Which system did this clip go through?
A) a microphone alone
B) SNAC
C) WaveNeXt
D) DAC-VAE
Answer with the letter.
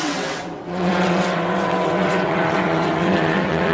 C